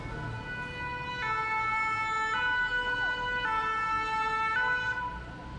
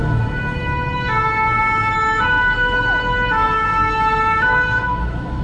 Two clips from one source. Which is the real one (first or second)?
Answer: first